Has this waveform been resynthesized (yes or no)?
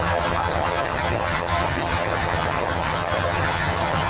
yes